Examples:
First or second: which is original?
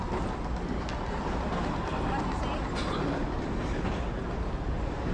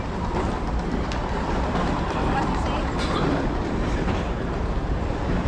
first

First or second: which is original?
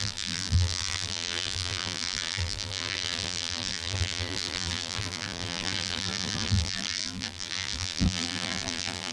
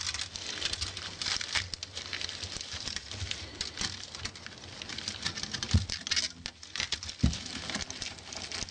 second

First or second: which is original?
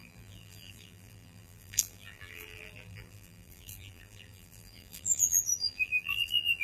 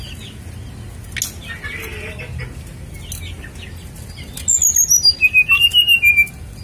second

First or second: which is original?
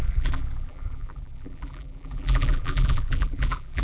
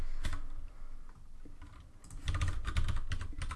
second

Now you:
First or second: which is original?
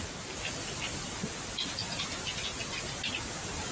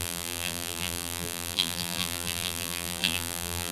first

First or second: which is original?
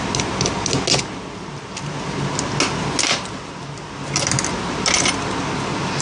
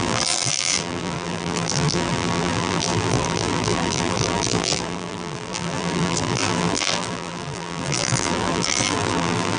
first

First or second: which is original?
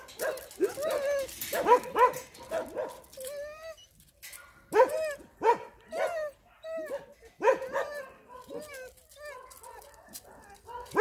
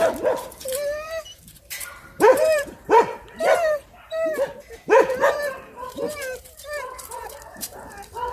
first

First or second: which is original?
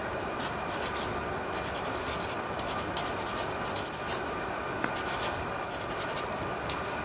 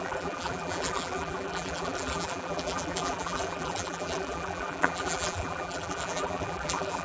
first